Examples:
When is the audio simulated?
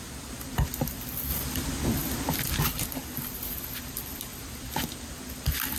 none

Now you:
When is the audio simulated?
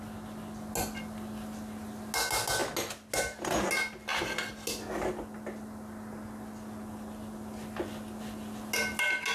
none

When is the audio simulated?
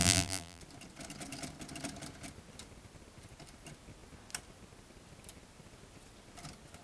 0.0-0.6 (vocoder, BigVGAN v2)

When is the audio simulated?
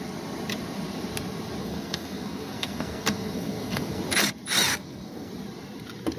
1.6-4.0 (codec, SNAC); 4.7-5.3